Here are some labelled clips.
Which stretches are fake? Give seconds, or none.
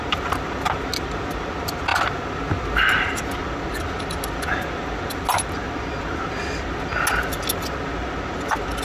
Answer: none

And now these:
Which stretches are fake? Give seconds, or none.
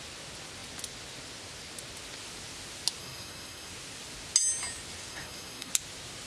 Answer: 3.0-3.7; 5.1-5.7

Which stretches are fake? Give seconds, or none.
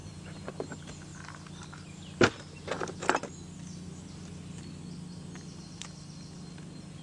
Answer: 0.0-0.5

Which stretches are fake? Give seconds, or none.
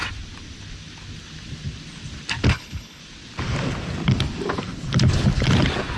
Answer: 2.5-3.0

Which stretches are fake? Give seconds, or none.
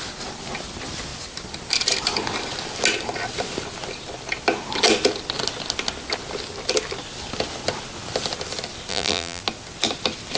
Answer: 8.9-9.4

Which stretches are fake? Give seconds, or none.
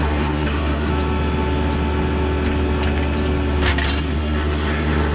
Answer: 0.0-0.9; 4.0-5.1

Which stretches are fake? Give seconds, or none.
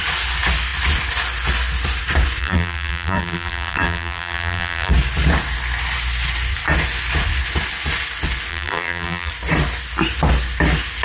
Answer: 2.4-4.9; 8.5-9.3